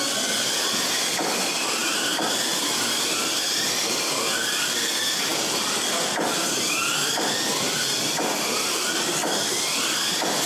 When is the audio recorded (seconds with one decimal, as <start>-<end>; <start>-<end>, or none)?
0.0-10.5